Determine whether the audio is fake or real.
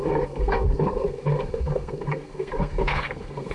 fake